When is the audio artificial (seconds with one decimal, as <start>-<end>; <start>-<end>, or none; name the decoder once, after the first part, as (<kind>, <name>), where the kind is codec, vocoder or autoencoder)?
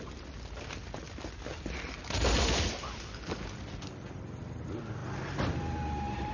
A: none